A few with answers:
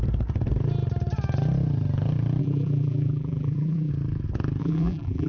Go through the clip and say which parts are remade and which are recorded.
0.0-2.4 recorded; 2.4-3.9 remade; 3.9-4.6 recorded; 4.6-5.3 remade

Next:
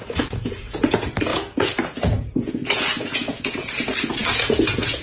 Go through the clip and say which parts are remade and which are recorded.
0.0-5.0 remade